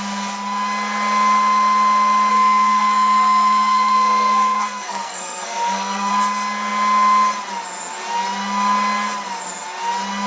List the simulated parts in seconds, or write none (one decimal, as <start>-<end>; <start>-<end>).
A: 2.3-6.1